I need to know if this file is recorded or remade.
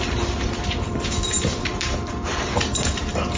remade